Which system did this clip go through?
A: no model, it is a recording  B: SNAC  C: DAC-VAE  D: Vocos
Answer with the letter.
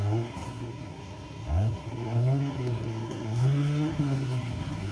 B